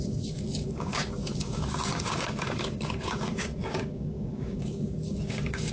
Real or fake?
fake